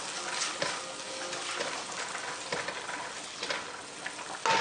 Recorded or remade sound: recorded